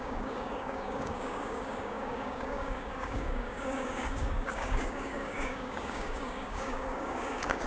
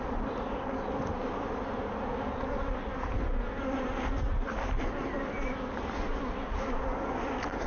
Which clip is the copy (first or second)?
first